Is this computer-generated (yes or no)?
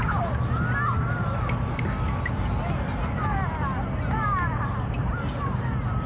no